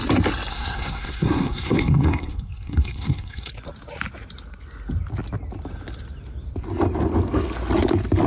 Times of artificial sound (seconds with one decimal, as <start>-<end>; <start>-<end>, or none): 0.5-3.5